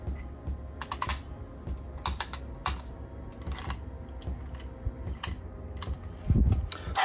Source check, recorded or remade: recorded